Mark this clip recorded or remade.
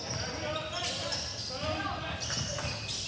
recorded